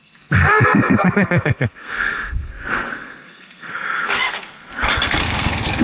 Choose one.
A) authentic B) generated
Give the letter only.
B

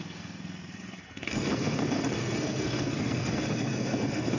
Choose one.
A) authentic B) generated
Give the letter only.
B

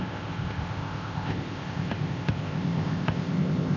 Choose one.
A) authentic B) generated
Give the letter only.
B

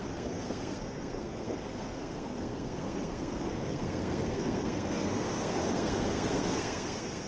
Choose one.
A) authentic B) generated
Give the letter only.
B